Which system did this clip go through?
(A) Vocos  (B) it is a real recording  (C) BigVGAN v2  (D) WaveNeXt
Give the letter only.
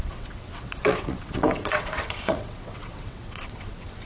D